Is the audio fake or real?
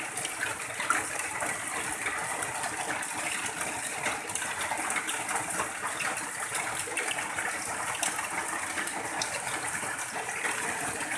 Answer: real